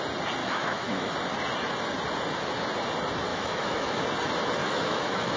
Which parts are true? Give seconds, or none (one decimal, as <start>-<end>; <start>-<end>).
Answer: 0.0-0.4; 1.1-3.3; 4.0-4.6